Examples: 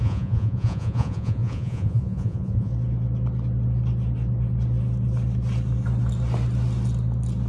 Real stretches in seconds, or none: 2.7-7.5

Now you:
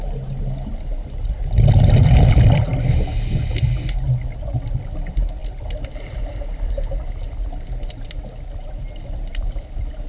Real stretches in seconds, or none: 0.0-10.1

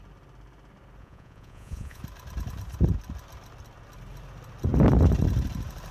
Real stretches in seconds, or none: 0.0-1.0; 2.0-5.9